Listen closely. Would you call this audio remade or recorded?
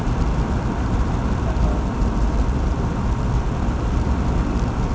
remade